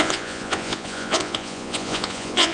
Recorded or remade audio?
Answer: remade